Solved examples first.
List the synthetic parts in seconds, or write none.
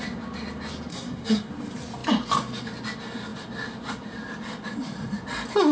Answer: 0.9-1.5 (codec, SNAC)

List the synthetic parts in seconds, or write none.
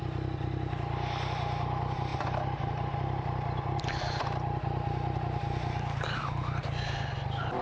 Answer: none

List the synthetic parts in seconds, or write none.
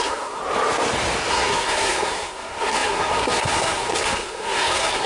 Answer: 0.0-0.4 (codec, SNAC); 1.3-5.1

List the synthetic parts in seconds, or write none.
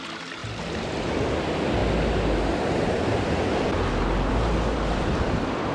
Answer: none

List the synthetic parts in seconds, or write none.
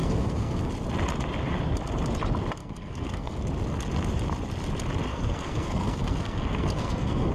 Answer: 0.0-0.7 (codec, SNAC); 2.6-3.4; 5.1-7.3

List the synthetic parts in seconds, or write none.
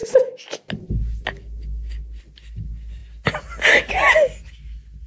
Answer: none